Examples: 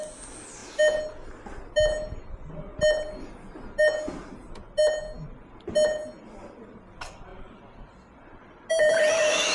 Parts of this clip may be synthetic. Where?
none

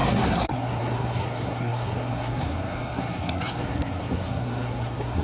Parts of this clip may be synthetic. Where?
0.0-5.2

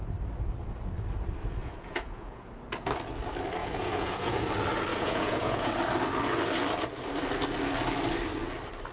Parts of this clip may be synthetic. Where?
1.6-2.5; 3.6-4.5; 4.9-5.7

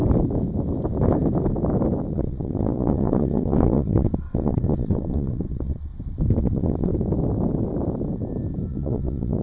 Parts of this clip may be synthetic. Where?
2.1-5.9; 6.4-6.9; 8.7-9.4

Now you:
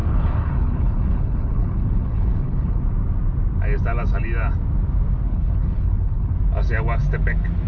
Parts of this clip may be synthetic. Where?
0.0-2.8; 5.3-6.3

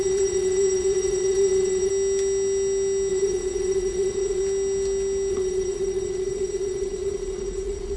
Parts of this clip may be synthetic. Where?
0.0-1.9; 3.1-4.4; 5.3-8.0

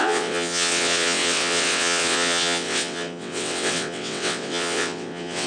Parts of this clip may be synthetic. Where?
0.0-5.5